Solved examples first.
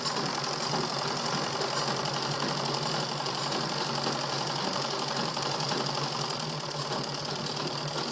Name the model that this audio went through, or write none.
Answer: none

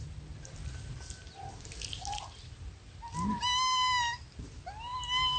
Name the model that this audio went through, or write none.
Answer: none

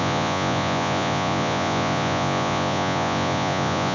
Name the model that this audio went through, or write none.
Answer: vocoder, Vocos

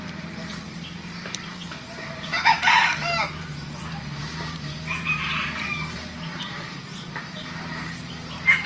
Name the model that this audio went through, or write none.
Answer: vocoder, BigVGAN v2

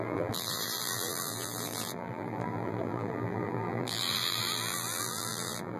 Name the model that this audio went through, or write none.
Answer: vocoder, BigVGAN v2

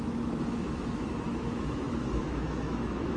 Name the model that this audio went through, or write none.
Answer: autoencoder, DAC-VAE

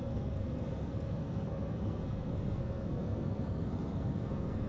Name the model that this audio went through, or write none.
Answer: codec, SNAC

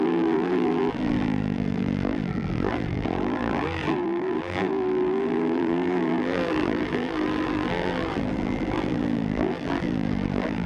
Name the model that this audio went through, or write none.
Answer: vocoder, BigVGAN v2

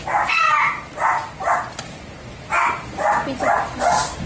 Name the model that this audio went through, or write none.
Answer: none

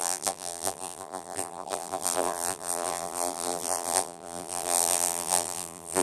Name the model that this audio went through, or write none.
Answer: vocoder, BigVGAN v2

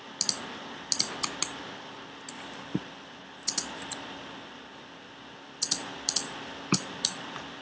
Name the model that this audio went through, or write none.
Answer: none